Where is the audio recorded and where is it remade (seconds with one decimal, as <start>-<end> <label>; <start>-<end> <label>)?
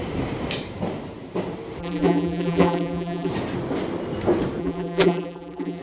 0.0-1.8 recorded; 1.8-3.3 remade; 3.3-4.6 recorded; 4.6-5.8 remade